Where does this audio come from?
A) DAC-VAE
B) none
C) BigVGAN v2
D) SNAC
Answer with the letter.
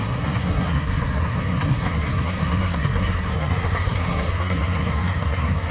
D